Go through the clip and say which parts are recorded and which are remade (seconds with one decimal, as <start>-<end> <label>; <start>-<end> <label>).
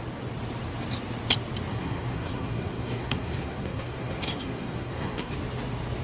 0.0-1.7 recorded; 1.7-5.3 remade; 5.3-6.0 recorded